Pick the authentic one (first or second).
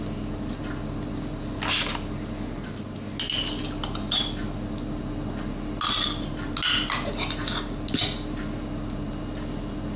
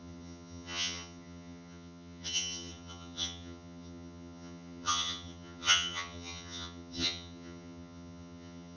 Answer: first